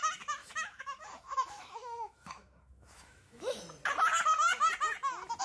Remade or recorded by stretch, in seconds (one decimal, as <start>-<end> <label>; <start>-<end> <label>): 0.0-0.4 recorded; 0.4-3.6 remade; 3.6-5.4 recorded